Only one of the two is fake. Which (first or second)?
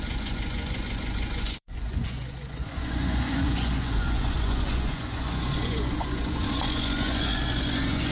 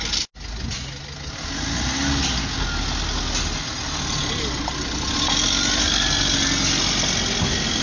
first